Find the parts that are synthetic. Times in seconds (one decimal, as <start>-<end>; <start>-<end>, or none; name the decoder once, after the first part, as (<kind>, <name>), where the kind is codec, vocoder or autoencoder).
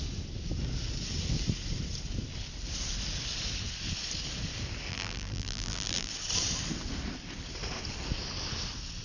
4.9-6.1 (vocoder, BigVGAN v2)